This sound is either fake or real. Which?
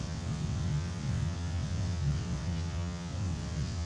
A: fake